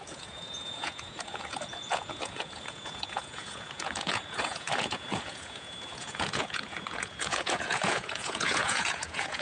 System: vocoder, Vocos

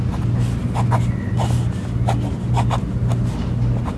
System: none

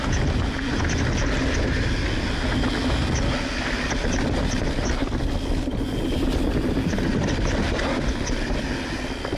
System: none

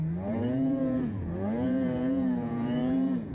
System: vocoder, Vocos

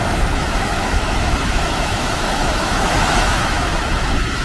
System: autoencoder, DAC-VAE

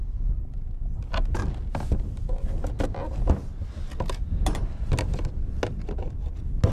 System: none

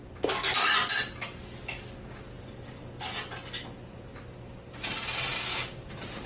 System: none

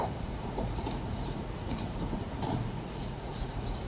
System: vocoder, Vocos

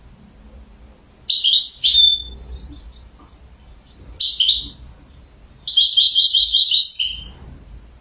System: none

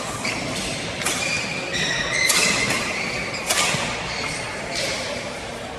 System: none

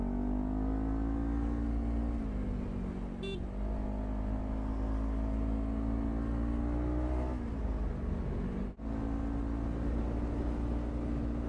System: none